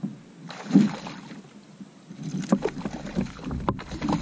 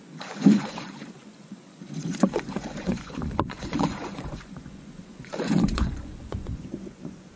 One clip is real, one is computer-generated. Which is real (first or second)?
first